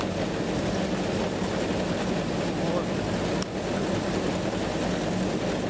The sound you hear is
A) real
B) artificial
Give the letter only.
A